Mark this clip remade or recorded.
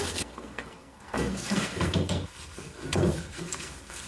remade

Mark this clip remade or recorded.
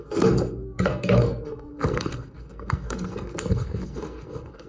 remade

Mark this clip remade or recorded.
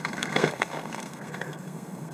remade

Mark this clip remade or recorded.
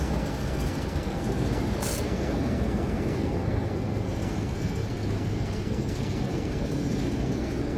remade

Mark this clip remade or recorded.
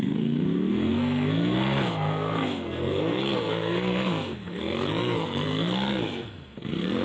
remade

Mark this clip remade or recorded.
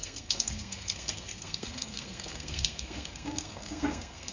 remade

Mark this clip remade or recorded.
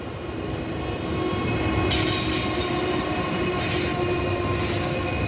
recorded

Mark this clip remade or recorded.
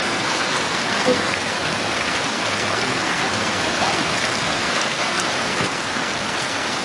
remade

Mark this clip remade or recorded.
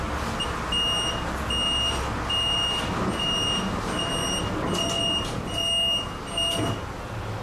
recorded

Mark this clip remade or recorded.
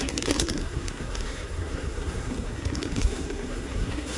remade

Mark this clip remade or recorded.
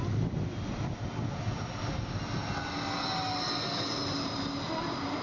recorded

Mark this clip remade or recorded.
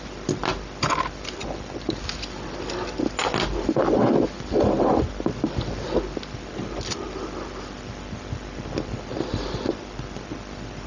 recorded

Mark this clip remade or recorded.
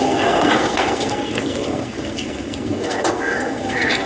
remade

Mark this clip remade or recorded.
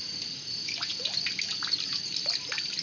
recorded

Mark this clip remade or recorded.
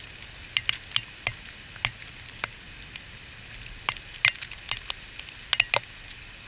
recorded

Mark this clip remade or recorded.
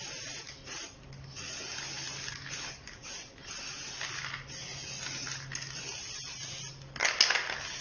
recorded